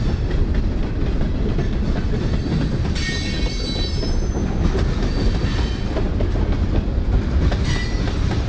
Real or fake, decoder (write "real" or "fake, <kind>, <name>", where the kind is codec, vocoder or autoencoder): real